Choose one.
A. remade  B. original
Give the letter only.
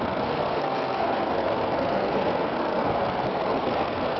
A